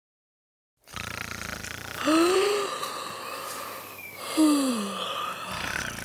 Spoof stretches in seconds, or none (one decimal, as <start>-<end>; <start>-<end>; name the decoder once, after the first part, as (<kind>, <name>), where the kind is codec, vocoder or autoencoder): none